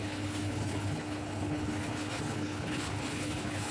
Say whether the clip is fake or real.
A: fake